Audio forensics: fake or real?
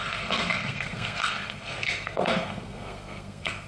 fake